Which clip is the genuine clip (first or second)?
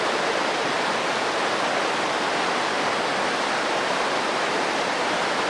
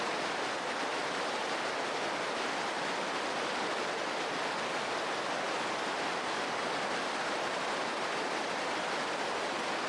second